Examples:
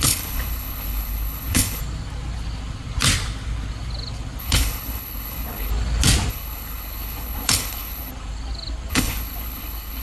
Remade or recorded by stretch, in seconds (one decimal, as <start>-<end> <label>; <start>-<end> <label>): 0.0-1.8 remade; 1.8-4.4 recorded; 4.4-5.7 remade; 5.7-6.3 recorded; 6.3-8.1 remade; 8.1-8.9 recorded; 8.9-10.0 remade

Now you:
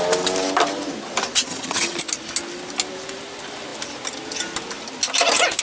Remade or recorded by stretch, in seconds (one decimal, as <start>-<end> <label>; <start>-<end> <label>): 0.0-1.5 recorded; 1.5-2.0 remade; 2.0-5.6 recorded

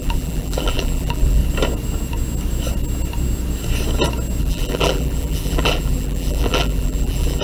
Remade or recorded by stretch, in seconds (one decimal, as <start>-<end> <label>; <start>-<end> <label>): 0.0-1.4 remade; 1.4-4.4 recorded; 4.4-7.4 remade

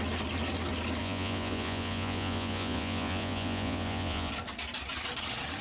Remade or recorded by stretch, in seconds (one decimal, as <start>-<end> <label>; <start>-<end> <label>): 0.0-1.0 recorded; 1.0-4.3 remade; 4.3-5.6 recorded

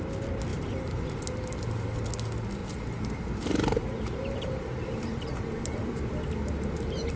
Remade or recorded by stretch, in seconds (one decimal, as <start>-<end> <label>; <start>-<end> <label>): 0.0-0.5 recorded; 0.5-1.1 remade; 1.1-2.6 recorded; 2.6-7.2 remade

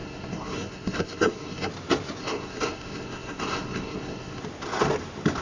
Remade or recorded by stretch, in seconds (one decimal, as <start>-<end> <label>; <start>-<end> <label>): 0.0-1.7 remade; 1.7-2.2 recorded; 2.2-4.4 remade; 4.4-5.4 recorded

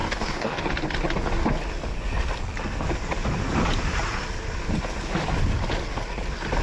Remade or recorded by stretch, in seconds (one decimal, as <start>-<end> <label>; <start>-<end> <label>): 0.0-0.6 remade; 0.6-6.6 recorded

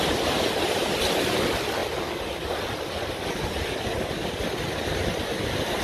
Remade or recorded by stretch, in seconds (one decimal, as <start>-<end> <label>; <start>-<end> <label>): 0.0-5.8 recorded